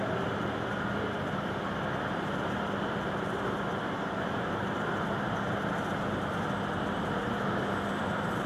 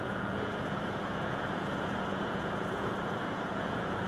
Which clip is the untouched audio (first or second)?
first